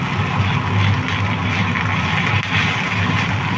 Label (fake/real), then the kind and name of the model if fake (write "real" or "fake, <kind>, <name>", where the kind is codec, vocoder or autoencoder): real